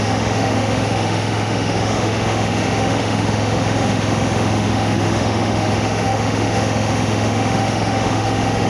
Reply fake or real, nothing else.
fake